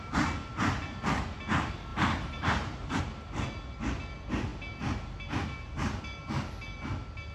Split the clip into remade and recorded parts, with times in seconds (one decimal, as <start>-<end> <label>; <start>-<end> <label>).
0.0-1.9 recorded; 1.9-3.0 remade; 3.0-7.3 recorded